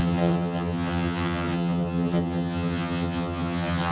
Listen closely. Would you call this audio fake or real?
fake